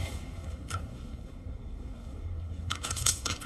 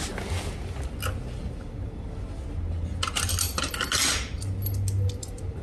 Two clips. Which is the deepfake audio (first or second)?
first